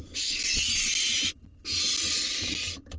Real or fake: real